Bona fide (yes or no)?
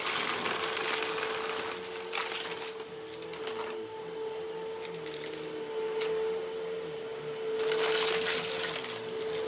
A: yes